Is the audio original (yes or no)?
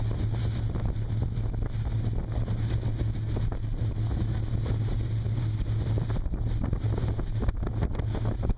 yes